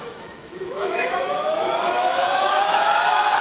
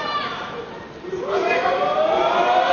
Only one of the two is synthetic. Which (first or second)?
first